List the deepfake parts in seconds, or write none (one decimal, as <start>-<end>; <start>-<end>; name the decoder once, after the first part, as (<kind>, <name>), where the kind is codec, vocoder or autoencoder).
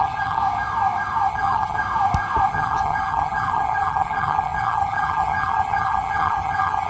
0.0-0.4 (vocoder, HiFi-GAN); 1.3-1.8; 2.5-6.9